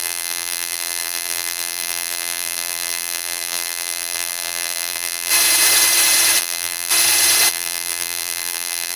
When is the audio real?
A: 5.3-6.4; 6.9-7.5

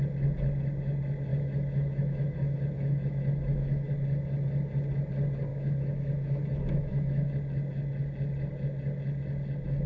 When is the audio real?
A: 0.0-1.3; 3.9-5.5; 7.3-9.9

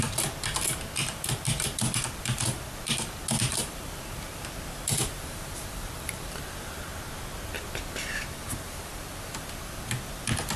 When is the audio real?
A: 0.0-1.0; 2.8-3.5; 6.8-8.9

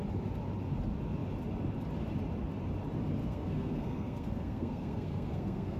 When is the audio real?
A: 0.0-3.2

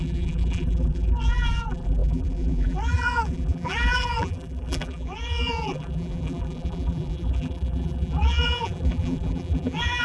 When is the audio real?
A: none